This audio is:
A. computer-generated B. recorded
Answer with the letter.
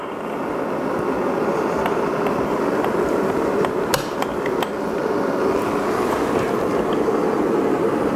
B